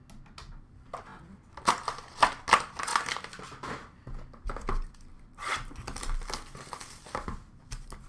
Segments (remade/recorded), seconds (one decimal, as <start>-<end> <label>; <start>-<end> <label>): 0.0-8.1 recorded